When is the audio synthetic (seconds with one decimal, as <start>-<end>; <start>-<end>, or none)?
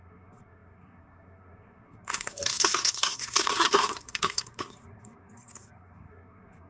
0.0-6.7